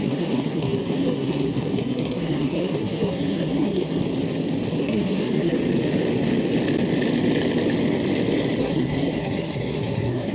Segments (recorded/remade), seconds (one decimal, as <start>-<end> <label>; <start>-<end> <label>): 0.0-4.0 remade; 4.0-4.8 recorded; 4.8-5.6 remade; 5.6-8.6 recorded; 8.6-10.3 remade